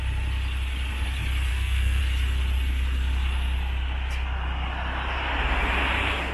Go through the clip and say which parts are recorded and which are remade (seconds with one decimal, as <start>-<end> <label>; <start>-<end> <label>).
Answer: 0.0-1.5 recorded; 1.5-2.0 remade; 2.0-6.3 recorded